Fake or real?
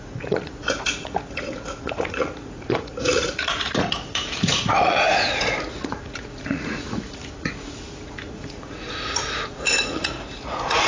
fake